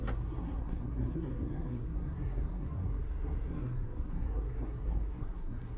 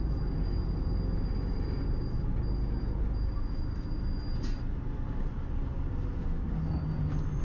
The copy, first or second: first